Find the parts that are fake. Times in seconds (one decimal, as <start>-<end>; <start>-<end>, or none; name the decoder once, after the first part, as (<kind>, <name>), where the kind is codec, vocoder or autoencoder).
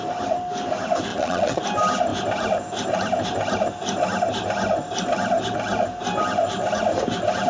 1.1-1.6 (vocoder, Vocos)